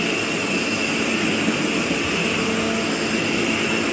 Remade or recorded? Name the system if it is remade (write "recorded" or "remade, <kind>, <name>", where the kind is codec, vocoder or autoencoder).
recorded